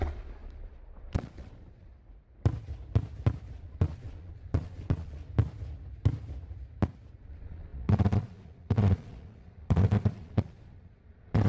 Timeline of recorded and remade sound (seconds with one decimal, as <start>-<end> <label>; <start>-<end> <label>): 0.0-1.9 remade; 1.9-3.6 recorded; 3.6-5.2 remade; 5.2-7.1 recorded; 7.1-11.5 remade